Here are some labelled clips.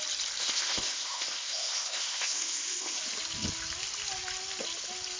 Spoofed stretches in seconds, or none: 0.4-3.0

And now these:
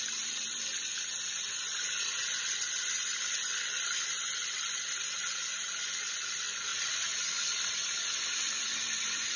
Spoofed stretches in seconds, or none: 0.0-0.9; 4.2-6.7

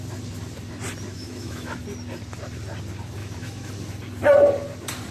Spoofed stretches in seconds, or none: 1.1-1.8; 3.2-3.7

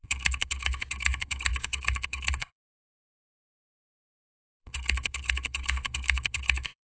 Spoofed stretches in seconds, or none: 0.0-6.9

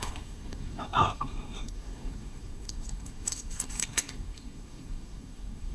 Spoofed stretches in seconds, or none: 0.0-5.7